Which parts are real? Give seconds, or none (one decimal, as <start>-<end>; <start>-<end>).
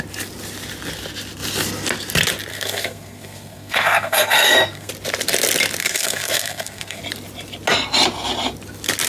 0.0-2.5; 4.9-5.8; 7.0-9.1